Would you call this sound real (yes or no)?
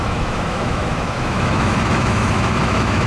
no